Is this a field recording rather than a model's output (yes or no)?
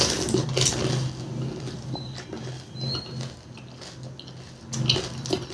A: yes